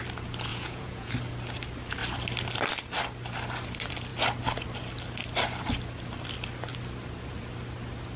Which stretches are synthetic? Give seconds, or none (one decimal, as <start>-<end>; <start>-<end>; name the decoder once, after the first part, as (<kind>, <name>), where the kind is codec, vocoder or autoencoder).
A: 0.5-1.1 (vocoder, Vocos)